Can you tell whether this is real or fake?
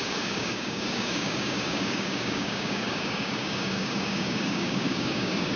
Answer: fake